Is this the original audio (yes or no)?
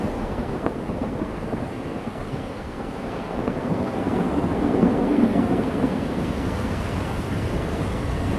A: no